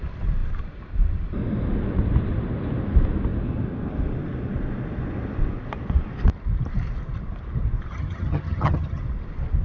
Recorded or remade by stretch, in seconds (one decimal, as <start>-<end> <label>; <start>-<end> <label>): 0.0-7.9 recorded; 7.9-9.0 remade; 9.0-9.6 recorded